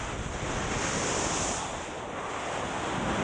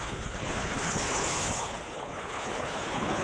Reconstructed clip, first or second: second